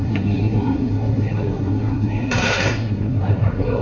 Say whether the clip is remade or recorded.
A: remade